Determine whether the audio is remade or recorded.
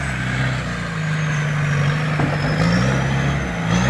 recorded